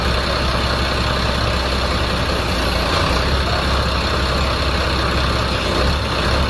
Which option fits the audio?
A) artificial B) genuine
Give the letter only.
B